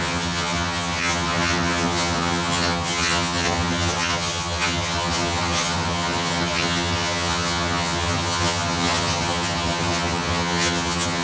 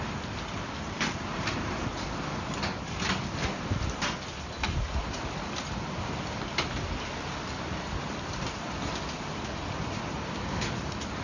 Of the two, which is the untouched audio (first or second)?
second